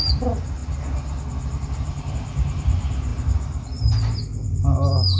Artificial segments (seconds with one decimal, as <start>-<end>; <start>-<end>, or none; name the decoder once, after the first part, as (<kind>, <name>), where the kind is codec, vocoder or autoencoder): none